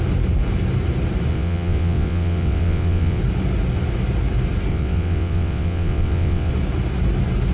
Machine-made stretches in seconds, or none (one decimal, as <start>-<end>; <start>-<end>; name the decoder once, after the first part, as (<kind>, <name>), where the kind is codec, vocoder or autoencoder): 1.3-3.2 (vocoder, WaveNeXt); 4.7-6.5